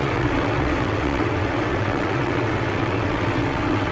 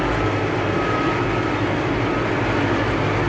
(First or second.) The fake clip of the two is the first